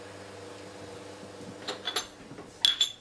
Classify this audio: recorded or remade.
recorded